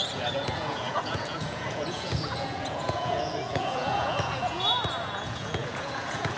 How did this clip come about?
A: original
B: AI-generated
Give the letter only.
B